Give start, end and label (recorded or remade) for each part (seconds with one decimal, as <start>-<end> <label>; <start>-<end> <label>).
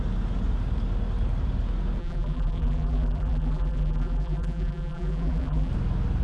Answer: 0.0-2.0 recorded; 2.0-5.7 remade; 5.7-6.2 recorded